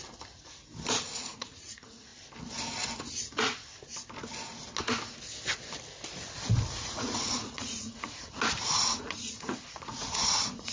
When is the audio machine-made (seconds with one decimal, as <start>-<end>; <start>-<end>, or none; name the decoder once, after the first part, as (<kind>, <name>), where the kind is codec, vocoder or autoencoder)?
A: 1.0-2.1 (vocoder, Vocos); 6.7-10.7